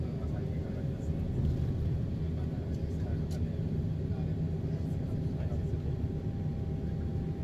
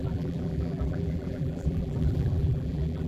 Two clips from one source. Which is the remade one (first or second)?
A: second